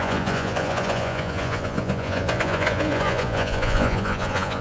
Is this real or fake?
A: fake